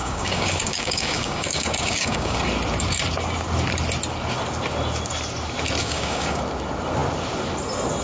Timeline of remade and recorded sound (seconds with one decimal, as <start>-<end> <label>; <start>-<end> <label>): 0.0-2.4 remade; 2.4-5.8 recorded; 5.8-6.4 remade; 6.4-8.0 recorded